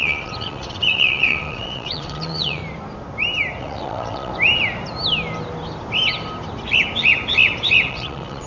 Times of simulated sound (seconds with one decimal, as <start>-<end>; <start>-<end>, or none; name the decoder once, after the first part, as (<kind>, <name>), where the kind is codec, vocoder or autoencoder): 0.0-2.6 (vocoder, WaveNeXt); 3.6-4.3; 7.9-8.5